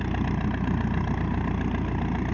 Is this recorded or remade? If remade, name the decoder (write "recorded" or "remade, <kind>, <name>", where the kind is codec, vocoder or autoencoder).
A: recorded